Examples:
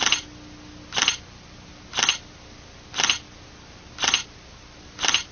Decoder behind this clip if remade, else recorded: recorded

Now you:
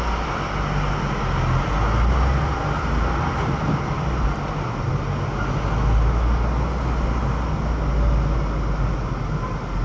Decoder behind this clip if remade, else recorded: recorded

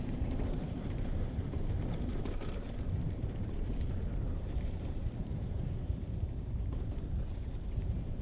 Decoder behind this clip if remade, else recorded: remade, vocoder, BigVGAN v2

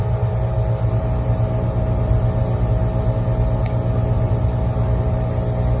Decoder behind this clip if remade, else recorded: recorded